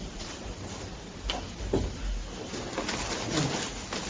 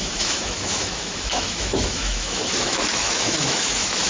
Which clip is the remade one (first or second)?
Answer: second